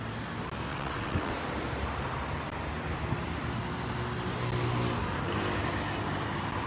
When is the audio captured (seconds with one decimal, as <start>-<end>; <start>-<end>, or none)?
0.0-0.7; 1.3-6.7